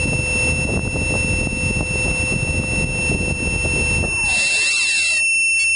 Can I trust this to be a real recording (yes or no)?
yes